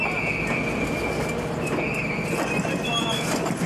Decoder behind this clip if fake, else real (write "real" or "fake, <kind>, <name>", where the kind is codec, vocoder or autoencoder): real